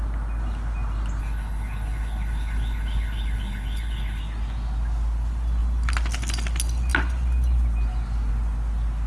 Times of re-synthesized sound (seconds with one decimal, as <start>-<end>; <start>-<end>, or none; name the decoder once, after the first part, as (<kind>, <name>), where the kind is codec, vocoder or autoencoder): 1.2-4.2 (codec, HILCodec)